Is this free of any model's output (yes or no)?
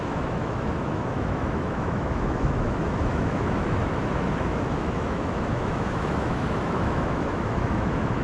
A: no